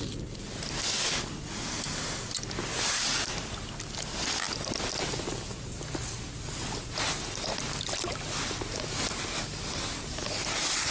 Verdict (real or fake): real